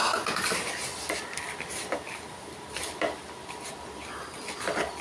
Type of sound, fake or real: real